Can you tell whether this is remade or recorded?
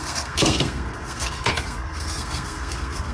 remade